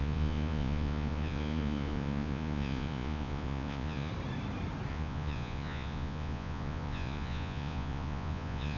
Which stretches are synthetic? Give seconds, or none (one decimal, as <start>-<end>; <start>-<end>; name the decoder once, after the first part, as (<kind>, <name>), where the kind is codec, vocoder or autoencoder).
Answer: 0.0-4.1 (vocoder, Vocos); 4.9-8.8